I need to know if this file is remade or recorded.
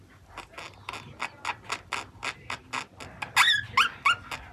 recorded